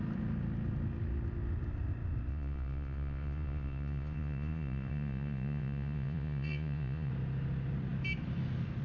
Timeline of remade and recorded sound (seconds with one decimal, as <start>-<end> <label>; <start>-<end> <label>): 0.0-2.3 recorded; 2.3-7.1 remade; 7.1-8.8 recorded